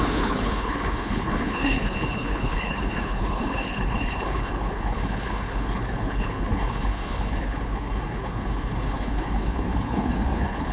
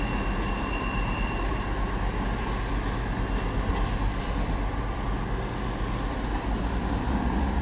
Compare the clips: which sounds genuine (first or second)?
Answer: second